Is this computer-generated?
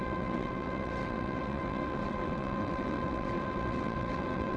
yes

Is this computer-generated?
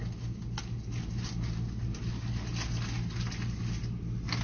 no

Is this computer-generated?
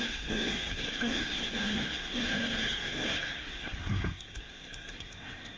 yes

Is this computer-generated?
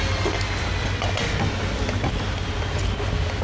no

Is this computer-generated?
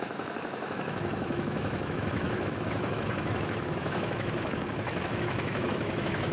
yes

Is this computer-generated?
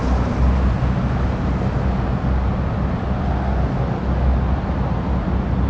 no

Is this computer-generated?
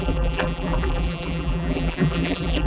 yes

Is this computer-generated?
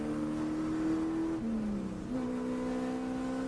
no